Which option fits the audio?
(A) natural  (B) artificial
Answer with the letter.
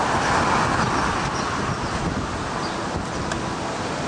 A